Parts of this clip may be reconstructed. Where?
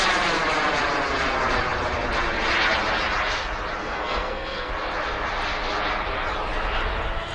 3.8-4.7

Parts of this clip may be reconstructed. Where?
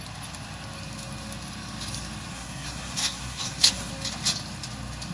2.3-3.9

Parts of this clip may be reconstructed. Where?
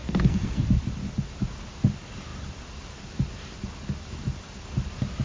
0.0-0.6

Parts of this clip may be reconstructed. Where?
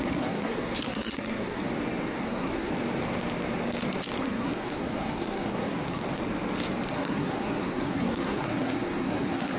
0.0-1.7; 2.2-2.7; 4.2-6.0; 6.9-9.6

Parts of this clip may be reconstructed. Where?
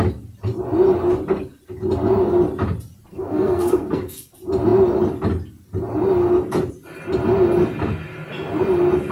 3.1-4.3